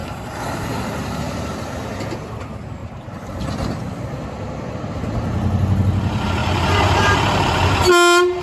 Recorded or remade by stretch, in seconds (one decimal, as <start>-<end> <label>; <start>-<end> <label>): 0.0-2.0 remade; 2.0-2.8 recorded; 2.8-3.8 remade; 3.8-6.4 recorded; 6.4-7.8 remade; 7.8-8.4 recorded